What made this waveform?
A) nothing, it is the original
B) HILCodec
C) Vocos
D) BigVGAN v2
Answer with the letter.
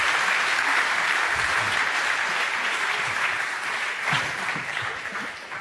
D